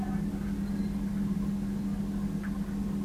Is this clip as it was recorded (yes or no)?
yes